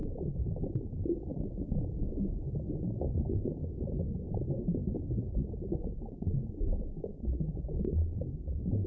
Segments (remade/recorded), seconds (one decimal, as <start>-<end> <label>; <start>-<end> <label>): 0.0-0.6 recorded; 0.6-1.3 remade; 1.3-2.7 recorded; 2.7-4.8 remade; 4.8-5.7 recorded; 5.7-8.9 remade